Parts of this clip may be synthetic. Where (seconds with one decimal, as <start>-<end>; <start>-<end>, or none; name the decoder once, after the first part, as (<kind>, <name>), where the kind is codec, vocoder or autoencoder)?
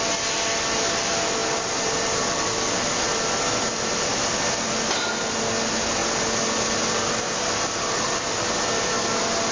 none